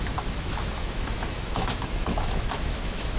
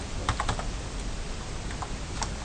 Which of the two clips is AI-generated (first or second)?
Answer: first